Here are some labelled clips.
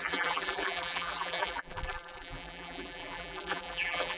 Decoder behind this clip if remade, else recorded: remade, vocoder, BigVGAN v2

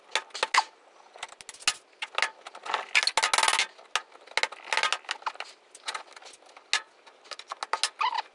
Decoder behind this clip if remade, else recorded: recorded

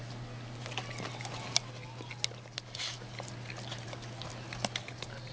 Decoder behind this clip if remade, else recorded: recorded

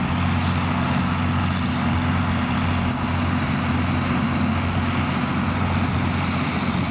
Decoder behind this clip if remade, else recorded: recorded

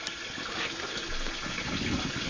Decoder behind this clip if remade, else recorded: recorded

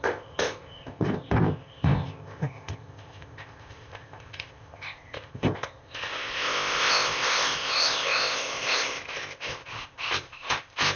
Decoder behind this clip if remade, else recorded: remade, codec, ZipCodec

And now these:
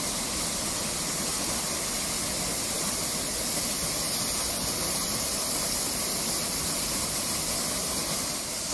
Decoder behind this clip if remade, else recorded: recorded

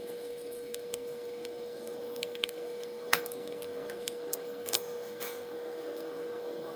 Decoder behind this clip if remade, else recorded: remade, codec, SNAC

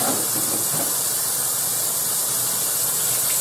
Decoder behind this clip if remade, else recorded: recorded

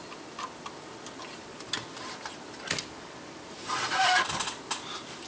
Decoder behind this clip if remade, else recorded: recorded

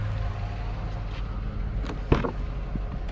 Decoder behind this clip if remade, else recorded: recorded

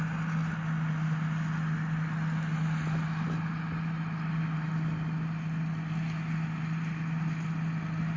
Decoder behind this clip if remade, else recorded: recorded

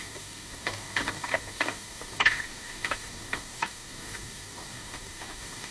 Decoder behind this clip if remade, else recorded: remade, codec, DAC